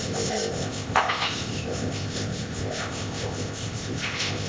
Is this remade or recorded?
remade